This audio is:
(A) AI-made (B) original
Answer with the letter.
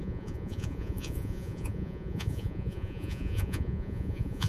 A